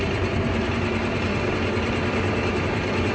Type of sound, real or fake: real